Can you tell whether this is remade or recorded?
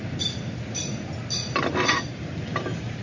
recorded